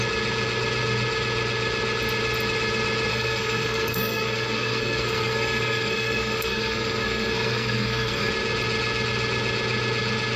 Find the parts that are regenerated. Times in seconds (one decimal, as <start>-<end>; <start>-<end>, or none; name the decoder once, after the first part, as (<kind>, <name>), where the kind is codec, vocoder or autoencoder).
3.1-8.3 (codec, SNAC)